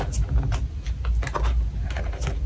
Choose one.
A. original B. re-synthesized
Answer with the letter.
A